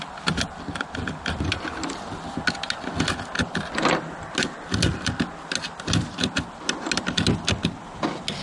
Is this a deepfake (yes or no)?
no